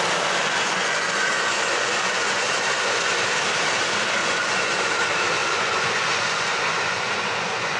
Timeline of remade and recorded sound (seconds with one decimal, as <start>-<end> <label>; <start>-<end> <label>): 0.0-0.4 recorded; 0.4-3.1 remade; 3.1-4.2 recorded; 4.2-4.9 remade; 4.9-5.4 recorded; 5.4-7.8 remade